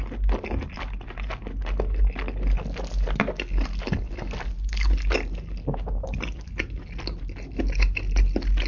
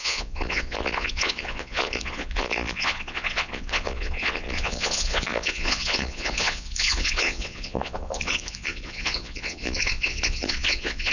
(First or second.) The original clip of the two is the first